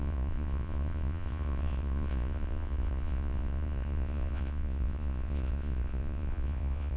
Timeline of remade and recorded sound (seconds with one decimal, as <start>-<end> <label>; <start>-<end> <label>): 0.0-7.0 remade